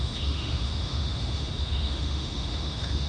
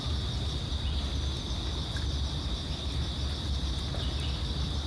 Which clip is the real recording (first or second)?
second